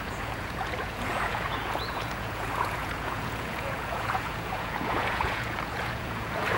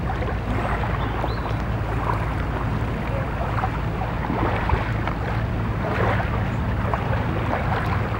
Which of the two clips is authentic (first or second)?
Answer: second